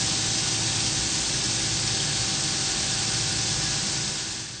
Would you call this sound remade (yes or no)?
no